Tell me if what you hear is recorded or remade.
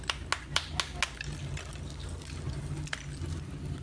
recorded